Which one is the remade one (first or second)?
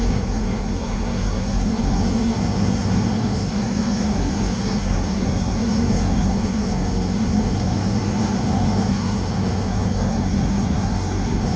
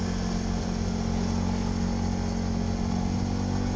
first